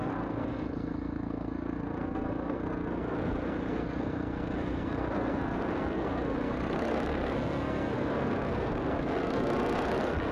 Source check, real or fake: fake